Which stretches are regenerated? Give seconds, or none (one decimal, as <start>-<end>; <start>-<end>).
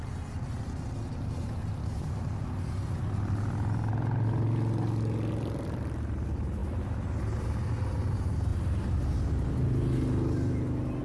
none